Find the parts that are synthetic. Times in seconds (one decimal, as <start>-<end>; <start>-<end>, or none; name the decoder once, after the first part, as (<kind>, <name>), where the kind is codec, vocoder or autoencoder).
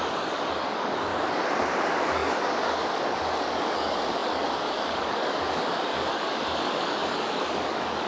0.0-1.1 (codec, DAC); 1.8-8.1